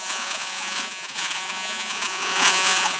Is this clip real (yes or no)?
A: no